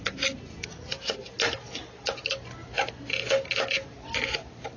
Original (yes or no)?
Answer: yes